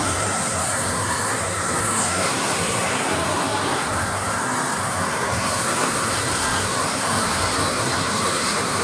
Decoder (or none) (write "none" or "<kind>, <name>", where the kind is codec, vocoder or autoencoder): codec, SNAC